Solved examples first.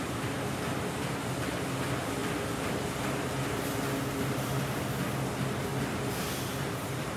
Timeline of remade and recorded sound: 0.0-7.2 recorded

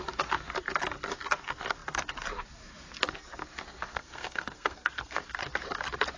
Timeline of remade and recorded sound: 0.0-3.9 recorded; 3.9-5.4 remade; 5.4-6.2 recorded

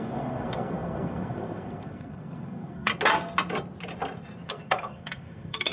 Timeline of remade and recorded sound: 0.0-2.9 remade; 2.9-4.5 recorded; 4.5-5.7 remade